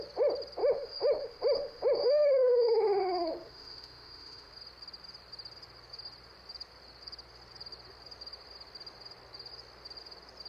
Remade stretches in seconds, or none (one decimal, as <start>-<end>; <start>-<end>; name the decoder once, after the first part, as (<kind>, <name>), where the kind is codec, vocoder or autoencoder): 0.6-4.5 (autoencoder, DAC-VAE)